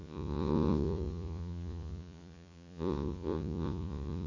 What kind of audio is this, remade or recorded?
remade